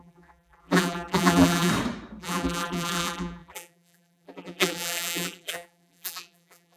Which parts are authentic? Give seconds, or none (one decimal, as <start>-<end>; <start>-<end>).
1.7-2.2